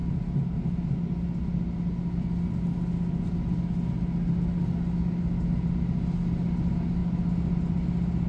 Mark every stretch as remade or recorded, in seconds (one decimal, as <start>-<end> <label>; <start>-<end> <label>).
0.0-8.3 recorded

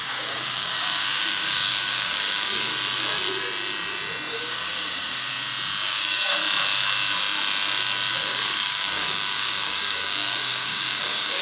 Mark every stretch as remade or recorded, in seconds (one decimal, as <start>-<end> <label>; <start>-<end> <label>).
0.0-2.7 remade; 2.7-4.3 recorded; 4.3-5.3 remade; 5.3-5.9 recorded; 5.9-6.4 remade; 6.4-8.1 recorded; 8.1-11.4 remade

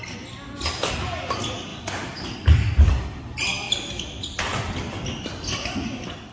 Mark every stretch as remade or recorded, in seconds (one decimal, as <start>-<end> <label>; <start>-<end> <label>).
0.0-6.3 recorded